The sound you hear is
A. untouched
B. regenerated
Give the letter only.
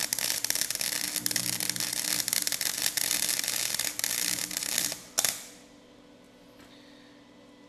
A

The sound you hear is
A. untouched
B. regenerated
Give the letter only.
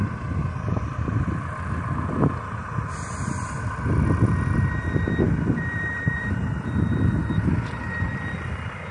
B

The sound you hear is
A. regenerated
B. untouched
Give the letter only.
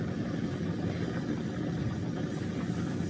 B